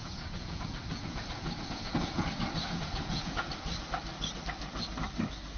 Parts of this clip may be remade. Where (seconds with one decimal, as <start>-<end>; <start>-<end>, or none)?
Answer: 0.0-3.5